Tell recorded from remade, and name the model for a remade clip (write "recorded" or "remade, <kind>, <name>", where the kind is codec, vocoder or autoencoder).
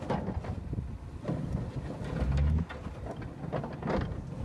recorded